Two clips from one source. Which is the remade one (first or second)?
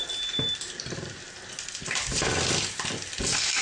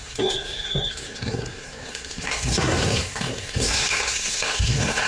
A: second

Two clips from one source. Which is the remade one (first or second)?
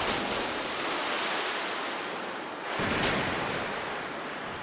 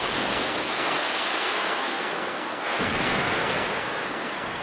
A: second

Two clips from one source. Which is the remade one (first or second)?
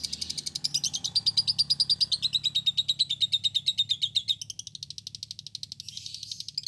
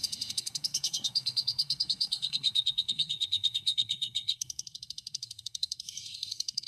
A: second